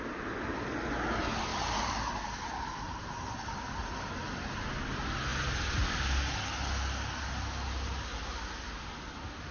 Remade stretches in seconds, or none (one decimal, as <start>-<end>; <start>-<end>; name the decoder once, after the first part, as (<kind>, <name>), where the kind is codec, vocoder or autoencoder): 1.5-4.1 (vocoder, BigVGAN v2)